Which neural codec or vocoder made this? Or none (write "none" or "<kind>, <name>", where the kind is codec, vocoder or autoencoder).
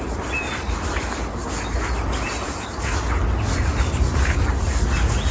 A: none